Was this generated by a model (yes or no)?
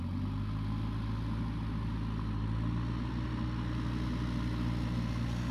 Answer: no